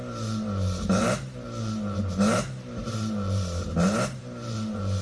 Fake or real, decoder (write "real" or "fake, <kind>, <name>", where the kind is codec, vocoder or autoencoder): fake, vocoder, BigVGAN v2